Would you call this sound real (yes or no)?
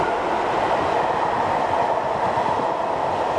yes